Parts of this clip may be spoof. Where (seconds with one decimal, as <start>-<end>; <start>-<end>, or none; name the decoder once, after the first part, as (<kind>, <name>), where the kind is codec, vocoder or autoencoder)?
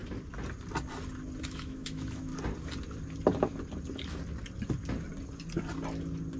1.4-2.3 (autoencoder, DAC-VAE)